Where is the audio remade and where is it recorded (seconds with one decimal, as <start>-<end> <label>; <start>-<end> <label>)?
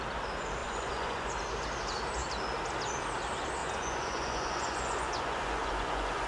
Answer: 0.0-0.6 recorded; 0.6-1.3 remade; 1.3-3.6 recorded; 3.6-6.3 remade